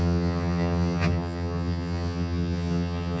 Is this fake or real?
fake